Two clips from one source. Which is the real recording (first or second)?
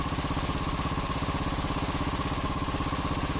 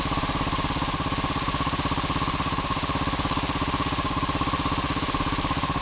first